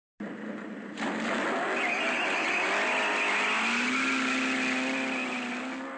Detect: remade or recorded recorded